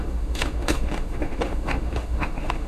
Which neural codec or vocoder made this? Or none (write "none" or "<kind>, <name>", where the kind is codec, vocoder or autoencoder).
autoencoder, DAC-VAE